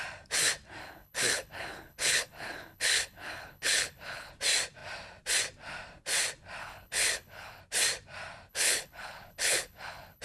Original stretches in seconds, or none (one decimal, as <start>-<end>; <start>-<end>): 0.0-0.8; 4.3-6.6; 7.6-8.5